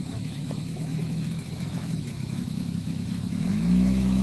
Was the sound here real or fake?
fake